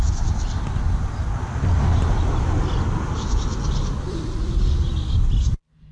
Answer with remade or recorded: recorded